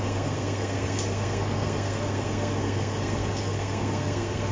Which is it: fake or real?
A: fake